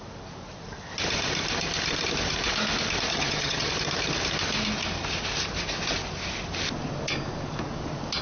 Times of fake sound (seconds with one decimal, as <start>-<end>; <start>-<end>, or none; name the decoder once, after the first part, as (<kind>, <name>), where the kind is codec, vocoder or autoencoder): 3.1-3.7 (vocoder, HiFi-GAN)

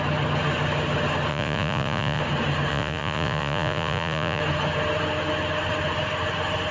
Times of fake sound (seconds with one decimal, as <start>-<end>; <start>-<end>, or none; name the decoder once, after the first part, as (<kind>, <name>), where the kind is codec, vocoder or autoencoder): 1.3-2.2 (vocoder, Vocos); 2.7-4.4

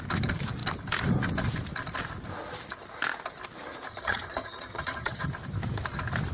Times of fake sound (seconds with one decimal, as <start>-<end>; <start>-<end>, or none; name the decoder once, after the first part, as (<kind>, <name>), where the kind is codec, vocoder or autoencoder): 3.9-5.3 (vocoder, HiFi-GAN)

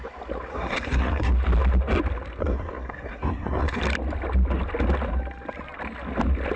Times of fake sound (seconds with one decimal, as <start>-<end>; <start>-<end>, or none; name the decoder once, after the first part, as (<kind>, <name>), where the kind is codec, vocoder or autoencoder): 0.5-1.3 (codec, SNAC); 2.4-3.8

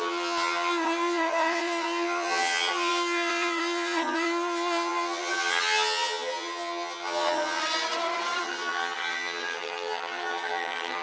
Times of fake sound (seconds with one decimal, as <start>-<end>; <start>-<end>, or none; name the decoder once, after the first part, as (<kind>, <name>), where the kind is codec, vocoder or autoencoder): 0.0-7.6 (vocoder, HiFi-GAN); 8.4-11.0

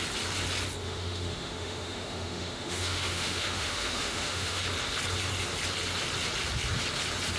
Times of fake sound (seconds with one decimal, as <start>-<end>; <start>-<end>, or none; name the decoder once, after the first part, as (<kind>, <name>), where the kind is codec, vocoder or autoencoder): 0.8-4.6 (autoencoder, DAC-VAE)

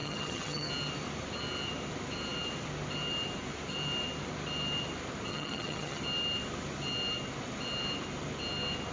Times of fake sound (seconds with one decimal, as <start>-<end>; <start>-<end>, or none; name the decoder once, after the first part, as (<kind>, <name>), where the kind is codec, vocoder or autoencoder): 0.0-0.7 (vocoder, HiFi-GAN); 5.3-6.0

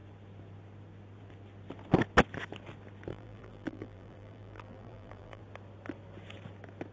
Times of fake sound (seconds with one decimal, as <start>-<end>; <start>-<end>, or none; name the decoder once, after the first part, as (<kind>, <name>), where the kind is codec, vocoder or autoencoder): 3.1-5.4 (vocoder, BigVGAN v2)